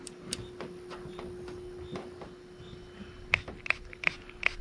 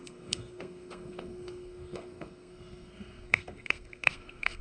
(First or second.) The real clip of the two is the first